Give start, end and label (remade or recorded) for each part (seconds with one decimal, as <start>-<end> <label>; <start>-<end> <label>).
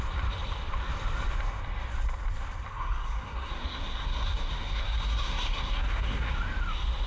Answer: 0.0-2.7 recorded; 2.7-6.3 remade; 6.3-7.1 recorded